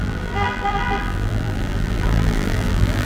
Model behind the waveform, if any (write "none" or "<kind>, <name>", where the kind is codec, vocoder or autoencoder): vocoder, BigVGAN v2